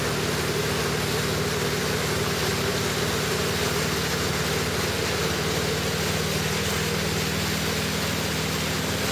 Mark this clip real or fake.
real